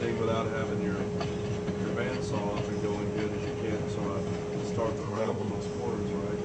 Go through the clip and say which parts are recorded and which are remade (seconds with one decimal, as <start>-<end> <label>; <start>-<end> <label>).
0.0-5.0 recorded; 5.0-5.5 remade; 5.5-6.4 recorded